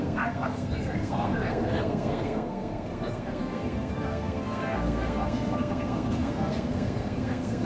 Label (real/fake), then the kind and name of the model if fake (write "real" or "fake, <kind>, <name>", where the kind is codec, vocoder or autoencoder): fake, codec, SNAC